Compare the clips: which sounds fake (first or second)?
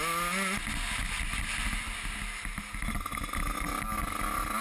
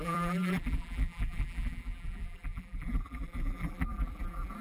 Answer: second